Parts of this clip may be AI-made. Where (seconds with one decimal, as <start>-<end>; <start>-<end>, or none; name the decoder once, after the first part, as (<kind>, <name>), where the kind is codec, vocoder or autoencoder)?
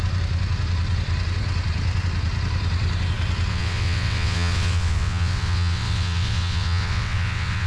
3.5-7.7 (vocoder, WaveNeXt)